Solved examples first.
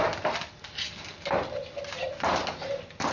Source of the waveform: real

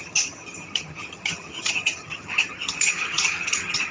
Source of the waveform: fake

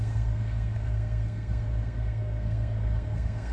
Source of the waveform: fake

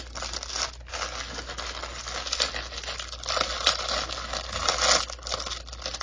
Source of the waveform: real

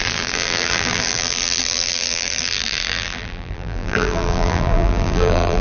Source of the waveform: fake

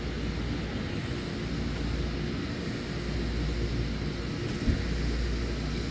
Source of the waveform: real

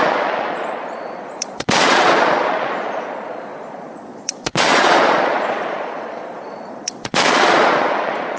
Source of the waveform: fake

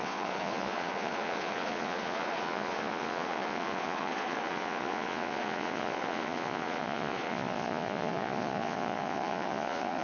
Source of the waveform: fake